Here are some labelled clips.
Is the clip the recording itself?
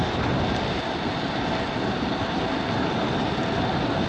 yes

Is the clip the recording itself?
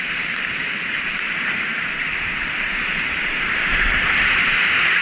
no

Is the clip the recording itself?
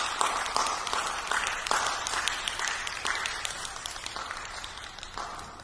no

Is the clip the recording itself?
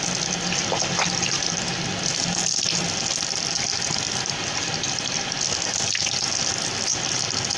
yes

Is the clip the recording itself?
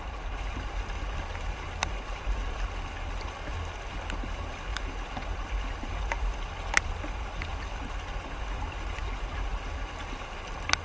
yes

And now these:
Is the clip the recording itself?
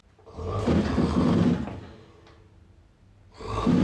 yes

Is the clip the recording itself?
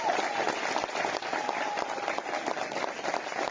no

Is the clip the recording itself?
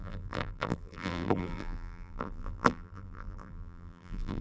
no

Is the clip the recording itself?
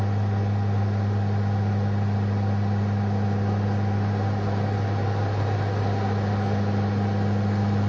yes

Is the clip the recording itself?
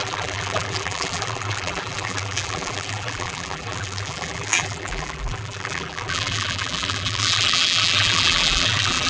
no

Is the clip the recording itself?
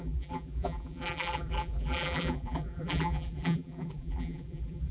no